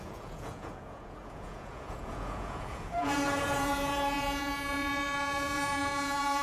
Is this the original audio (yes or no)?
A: no